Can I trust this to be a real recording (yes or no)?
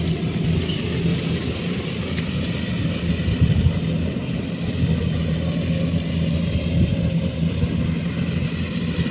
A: yes